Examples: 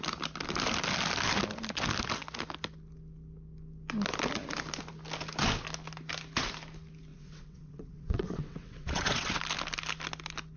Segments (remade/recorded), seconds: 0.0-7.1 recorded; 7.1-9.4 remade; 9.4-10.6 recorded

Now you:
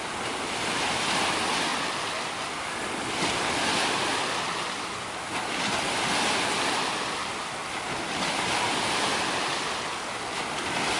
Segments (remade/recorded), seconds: 0.0-11.0 recorded